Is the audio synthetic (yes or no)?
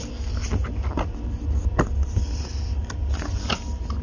no